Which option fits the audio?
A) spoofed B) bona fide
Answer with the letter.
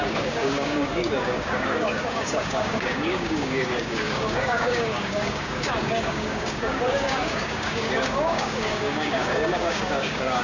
A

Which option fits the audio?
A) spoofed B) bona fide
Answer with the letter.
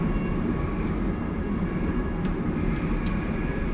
B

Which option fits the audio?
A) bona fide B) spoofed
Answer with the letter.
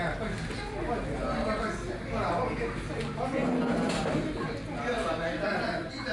A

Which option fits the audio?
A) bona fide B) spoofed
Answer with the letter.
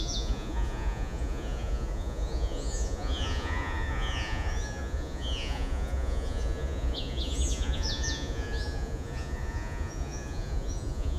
B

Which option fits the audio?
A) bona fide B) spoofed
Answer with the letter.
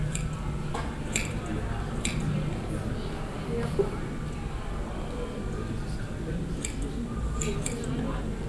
A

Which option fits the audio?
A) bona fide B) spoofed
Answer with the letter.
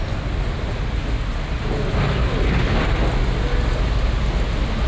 A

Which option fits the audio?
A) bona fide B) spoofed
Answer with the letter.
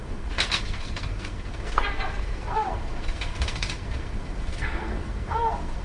B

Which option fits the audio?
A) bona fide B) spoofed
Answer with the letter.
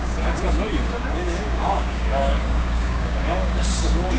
B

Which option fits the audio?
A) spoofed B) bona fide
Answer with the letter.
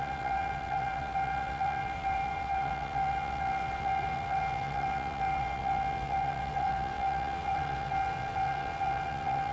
A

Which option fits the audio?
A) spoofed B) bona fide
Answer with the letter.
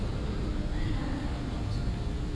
B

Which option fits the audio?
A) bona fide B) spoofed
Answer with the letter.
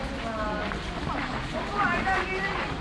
A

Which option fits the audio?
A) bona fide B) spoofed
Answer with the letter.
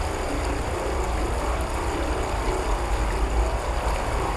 A